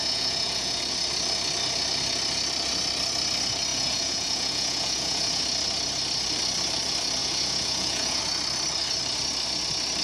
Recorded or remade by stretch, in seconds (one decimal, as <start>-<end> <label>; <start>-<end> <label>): 0.0-0.8 remade; 0.8-3.7 recorded; 3.7-5.4 remade; 5.4-7.2 recorded; 7.2-8.2 remade; 8.2-10.0 recorded